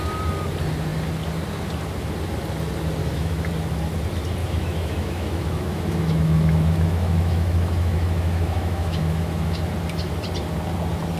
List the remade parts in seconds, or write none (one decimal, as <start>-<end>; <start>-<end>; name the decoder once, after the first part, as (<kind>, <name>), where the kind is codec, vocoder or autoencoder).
3.0-3.5 (autoencoder, DAC-VAE); 4.4-9.6